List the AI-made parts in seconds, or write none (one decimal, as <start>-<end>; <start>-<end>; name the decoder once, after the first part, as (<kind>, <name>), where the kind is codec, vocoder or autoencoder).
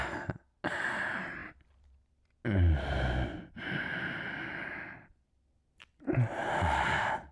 none